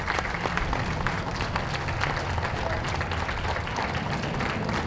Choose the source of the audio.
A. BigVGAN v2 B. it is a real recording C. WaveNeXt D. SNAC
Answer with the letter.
B